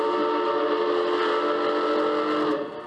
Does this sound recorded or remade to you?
recorded